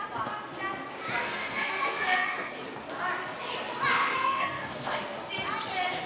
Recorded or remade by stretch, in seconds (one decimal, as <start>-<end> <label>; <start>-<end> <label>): 0.0-1.2 recorded; 1.2-2.5 remade; 2.5-3.9 recorded; 3.9-5.0 remade; 5.0-6.1 recorded